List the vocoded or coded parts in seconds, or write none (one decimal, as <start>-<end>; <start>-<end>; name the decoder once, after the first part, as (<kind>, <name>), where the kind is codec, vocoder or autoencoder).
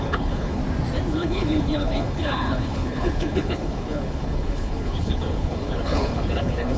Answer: 0.0-0.6 (codec, HILCodec); 1.1-6.8